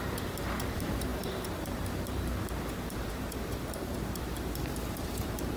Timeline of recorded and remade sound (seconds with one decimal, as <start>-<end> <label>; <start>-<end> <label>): 0.0-5.6 remade